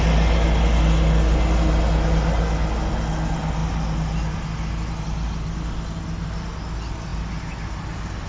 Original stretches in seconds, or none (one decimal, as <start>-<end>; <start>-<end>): 0.0-8.3